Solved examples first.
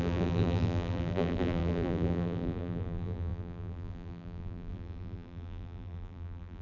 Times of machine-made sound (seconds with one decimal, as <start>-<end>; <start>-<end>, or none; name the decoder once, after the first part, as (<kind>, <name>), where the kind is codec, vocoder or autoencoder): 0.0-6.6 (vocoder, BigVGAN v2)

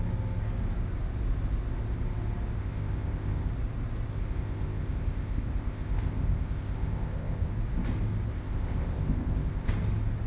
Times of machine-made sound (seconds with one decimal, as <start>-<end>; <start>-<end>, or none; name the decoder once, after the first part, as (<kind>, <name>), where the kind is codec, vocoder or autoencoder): 2.6-3.5 (codec, ZipCodec); 4.1-7.5; 8.3-9.7

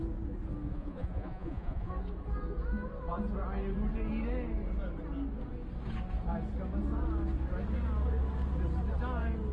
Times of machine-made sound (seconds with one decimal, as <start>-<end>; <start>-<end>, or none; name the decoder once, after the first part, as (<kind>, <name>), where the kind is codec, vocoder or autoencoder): 0.7-1.9 (vocoder, Vocos)

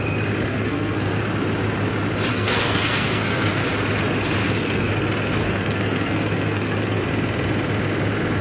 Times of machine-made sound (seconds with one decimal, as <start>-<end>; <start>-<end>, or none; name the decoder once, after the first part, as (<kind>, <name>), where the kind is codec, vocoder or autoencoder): 0.5-1.2 (codec, SNAC); 2.3-3.5; 4.4-4.9; 5.4-7.0